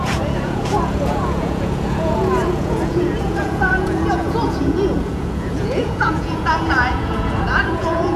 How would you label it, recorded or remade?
remade